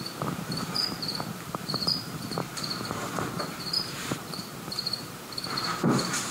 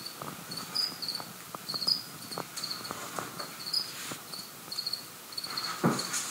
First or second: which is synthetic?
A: first